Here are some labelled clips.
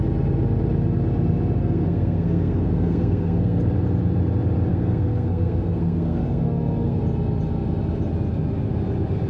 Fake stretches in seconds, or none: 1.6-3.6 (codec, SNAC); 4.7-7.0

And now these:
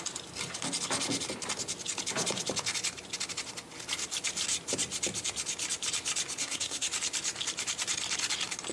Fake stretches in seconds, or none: 6.4-6.9 (codec, SNAC)